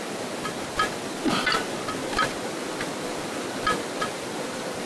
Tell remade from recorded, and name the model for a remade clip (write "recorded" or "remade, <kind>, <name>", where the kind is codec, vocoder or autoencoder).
recorded